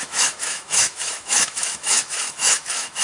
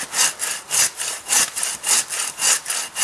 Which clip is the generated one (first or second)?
first